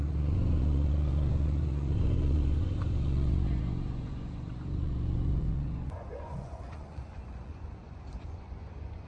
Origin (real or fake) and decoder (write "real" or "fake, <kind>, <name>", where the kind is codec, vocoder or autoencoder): fake, vocoder, Vocos